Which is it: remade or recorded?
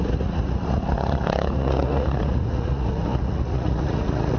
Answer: remade